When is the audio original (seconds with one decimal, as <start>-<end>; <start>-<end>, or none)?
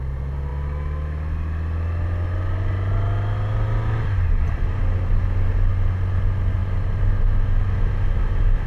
0.0-6.6; 7.1-8.7